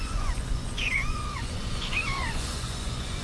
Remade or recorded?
remade